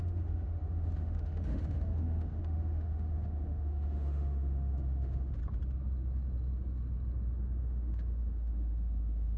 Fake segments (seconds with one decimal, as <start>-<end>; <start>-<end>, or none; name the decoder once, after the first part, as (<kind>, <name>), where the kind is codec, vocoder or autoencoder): 0.0-5.4 (autoencoder, DAC-VAE); 7.6-9.4